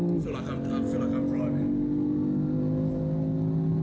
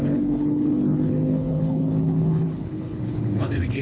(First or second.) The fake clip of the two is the second